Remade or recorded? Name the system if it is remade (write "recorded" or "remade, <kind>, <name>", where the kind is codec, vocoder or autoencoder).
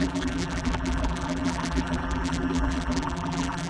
remade, vocoder, BigVGAN v2